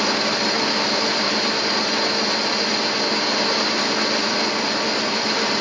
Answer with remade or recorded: recorded